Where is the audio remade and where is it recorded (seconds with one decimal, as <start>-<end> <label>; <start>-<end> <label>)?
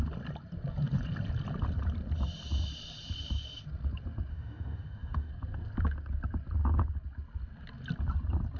0.0-4.3 recorded; 4.3-5.3 remade; 5.3-8.6 recorded